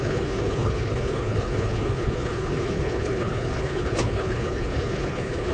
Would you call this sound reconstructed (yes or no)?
yes